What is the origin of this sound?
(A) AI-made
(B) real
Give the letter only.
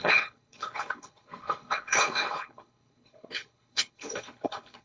A